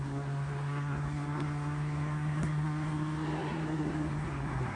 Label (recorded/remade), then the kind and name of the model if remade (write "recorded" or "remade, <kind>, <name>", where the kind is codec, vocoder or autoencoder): remade, codec, SNAC